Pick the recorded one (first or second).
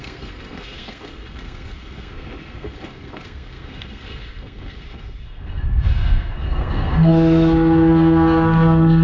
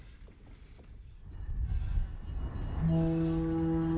second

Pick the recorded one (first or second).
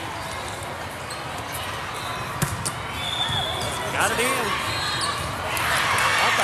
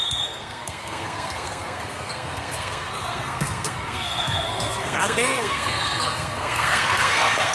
first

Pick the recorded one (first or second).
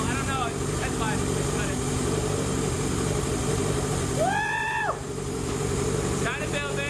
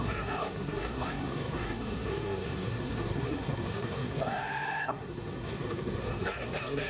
first